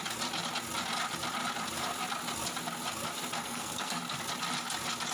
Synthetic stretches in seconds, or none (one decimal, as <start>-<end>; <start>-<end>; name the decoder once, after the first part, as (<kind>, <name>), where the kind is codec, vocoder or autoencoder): 3.4-4.0 (codec, SNAC)

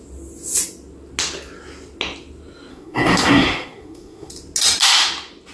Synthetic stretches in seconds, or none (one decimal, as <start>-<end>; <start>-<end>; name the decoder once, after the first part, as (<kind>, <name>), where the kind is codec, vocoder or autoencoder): 2.7-4.3 (codec, SNAC)